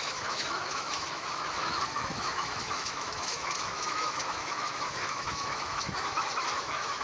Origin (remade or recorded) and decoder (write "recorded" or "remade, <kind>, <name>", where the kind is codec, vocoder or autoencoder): remade, autoencoder, DAC-VAE